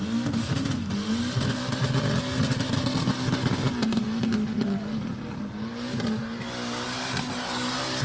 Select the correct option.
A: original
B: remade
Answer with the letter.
A